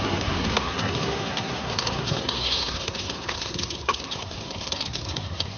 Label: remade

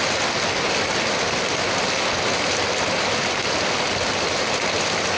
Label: recorded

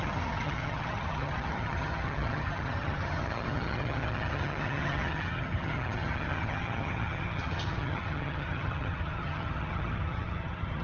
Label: remade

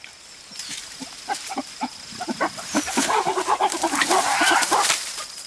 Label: remade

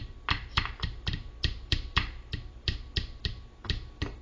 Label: recorded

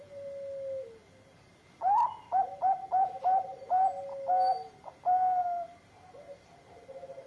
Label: recorded